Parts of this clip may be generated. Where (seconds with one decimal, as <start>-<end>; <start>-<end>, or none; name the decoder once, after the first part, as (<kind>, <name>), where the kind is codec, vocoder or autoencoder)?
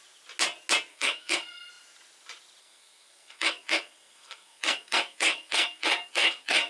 0.9-1.7 (codec, SNAC); 2.6-6.7